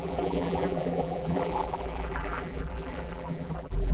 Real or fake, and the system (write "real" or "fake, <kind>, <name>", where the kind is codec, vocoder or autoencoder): fake, vocoder, BigVGAN v2